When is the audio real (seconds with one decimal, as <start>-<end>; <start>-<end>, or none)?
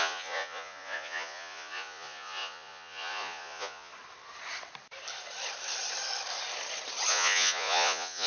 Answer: 3.9-7.1